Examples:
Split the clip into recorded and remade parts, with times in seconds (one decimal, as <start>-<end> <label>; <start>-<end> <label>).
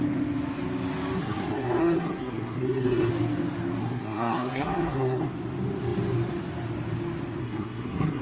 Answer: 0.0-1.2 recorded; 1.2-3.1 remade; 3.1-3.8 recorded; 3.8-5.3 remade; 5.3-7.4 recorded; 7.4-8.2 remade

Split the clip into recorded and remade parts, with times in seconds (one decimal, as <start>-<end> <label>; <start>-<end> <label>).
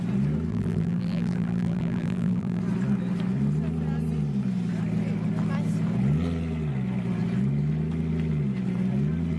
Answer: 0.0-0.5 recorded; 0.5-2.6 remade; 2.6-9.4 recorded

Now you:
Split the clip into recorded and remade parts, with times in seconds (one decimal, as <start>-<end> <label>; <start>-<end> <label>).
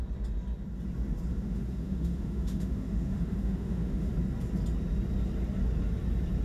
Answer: 0.0-1.3 recorded; 1.3-4.1 remade; 4.1-6.4 recorded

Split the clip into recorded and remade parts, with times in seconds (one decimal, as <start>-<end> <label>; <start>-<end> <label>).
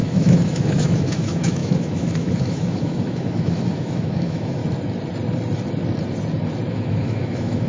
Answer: 0.0-4.6 remade; 4.6-6.7 recorded; 6.7-7.7 remade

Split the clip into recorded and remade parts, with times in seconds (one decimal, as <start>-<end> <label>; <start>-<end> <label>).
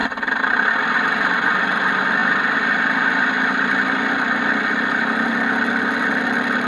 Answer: 0.0-6.7 recorded